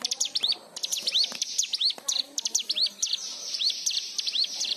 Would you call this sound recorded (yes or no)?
no